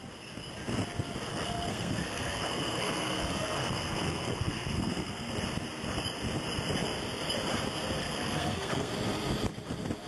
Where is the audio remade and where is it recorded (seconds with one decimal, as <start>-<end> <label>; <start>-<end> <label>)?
0.0-1.3 recorded; 1.3-5.3 remade; 5.3-8.0 recorded; 8.0-8.9 remade; 8.9-10.1 recorded